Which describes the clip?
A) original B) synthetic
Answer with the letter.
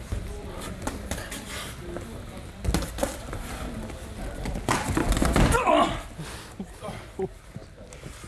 A